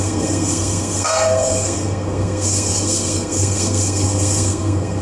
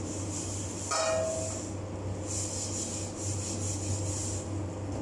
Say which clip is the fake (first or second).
first